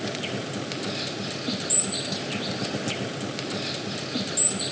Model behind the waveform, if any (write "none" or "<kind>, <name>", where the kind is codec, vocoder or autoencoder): none